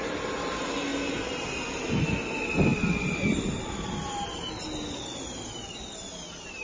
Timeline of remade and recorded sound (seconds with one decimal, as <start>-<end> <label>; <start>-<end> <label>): 0.0-6.6 recorded